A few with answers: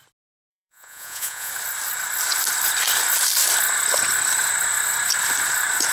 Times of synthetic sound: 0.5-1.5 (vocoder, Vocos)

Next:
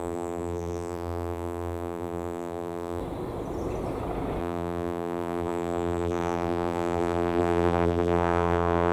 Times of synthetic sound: 0.0-3.0 (vocoder, BigVGAN v2); 4.4-8.9

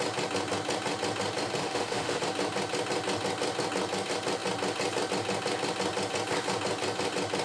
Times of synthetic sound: 1.6-2.2 (autoencoder, DAC-VAE)